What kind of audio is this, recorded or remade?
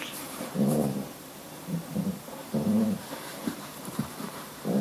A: remade